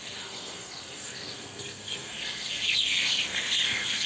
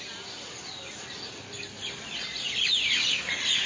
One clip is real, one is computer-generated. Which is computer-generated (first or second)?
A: first